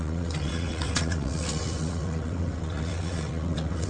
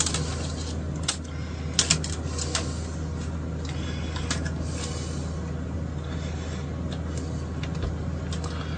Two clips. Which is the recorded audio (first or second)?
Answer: second